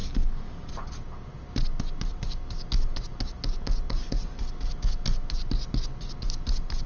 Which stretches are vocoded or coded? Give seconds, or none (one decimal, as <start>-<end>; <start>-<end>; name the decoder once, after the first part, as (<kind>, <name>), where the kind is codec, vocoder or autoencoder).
0.0-0.7 (codec, DAC)